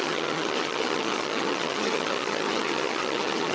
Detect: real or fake fake